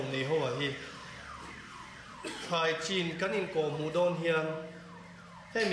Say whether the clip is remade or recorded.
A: recorded